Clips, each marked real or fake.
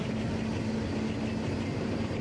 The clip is real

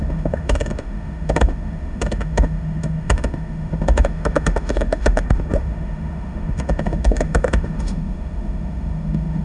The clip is fake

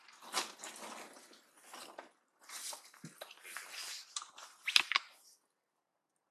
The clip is real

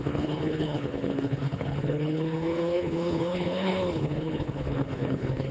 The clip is fake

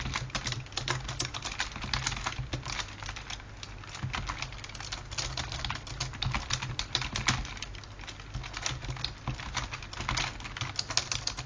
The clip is real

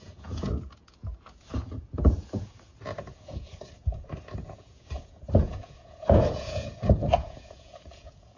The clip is fake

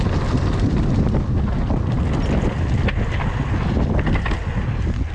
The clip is real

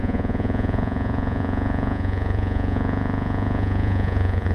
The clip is fake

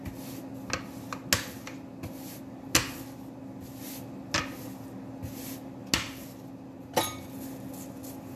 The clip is real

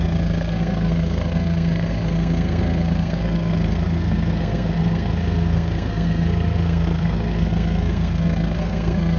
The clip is fake